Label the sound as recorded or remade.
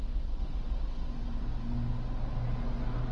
recorded